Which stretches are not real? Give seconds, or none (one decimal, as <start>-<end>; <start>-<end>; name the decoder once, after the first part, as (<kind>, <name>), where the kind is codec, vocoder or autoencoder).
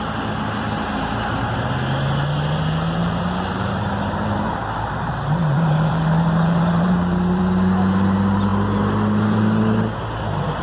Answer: 3.0-7.4 (vocoder, BigVGAN v2)